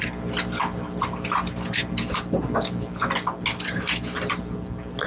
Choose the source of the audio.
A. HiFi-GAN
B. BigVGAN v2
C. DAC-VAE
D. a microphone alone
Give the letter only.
D